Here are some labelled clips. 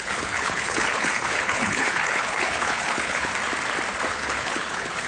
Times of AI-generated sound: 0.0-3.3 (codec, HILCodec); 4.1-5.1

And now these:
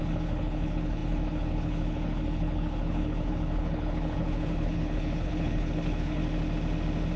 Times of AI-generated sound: 0.0-6.2 (codec, HILCodec)

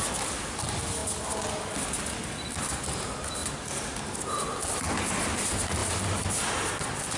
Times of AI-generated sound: none

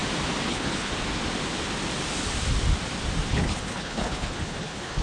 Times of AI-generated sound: 0.5-0.9 (codec, HILCodec); 3.3-5.0